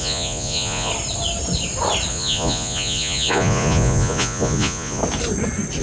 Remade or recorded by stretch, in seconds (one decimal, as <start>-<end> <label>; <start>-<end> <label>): 0.0-0.9 remade; 0.9-2.1 recorded; 2.1-5.0 remade; 5.0-5.8 recorded